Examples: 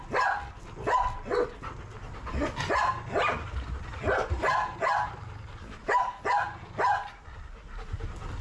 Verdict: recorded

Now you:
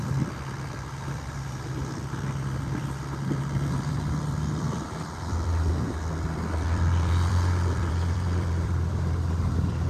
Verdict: remade